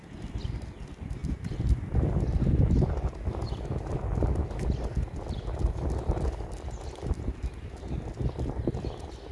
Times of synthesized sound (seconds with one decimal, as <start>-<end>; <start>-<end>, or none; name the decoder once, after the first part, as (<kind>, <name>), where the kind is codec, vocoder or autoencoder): none